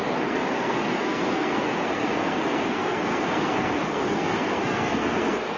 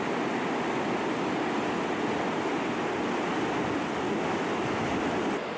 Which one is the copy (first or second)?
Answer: first